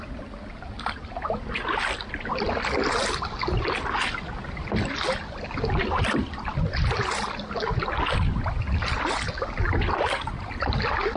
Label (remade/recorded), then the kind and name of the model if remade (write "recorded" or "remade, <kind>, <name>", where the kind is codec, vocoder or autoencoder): recorded